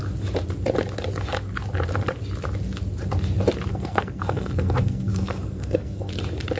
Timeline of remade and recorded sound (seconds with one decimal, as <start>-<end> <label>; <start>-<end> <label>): 0.0-3.7 recorded; 3.7-6.1 remade; 6.1-6.6 recorded